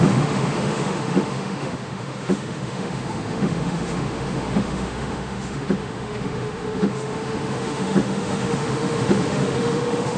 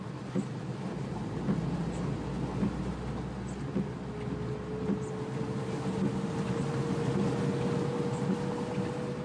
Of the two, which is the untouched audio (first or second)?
second